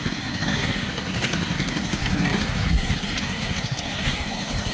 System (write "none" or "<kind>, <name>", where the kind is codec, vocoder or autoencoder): codec, SNAC